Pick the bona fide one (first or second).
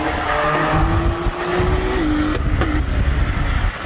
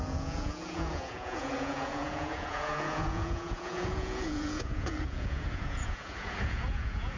first